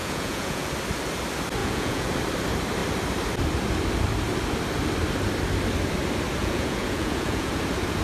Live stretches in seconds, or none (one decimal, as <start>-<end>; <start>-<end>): 0.7-1.6; 2.1-6.4; 7.5-8.0